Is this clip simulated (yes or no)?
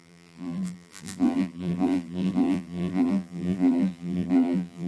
yes